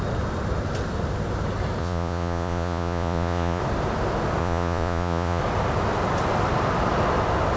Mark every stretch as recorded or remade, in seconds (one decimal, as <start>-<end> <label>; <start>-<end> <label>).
0.0-1.8 recorded; 1.8-3.6 remade; 3.6-4.4 recorded; 4.4-5.4 remade; 5.4-7.6 recorded

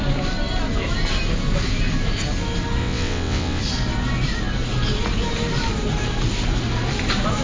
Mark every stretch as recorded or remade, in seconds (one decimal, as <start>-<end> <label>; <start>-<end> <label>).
0.0-2.8 recorded; 2.8-3.6 remade; 3.6-7.4 recorded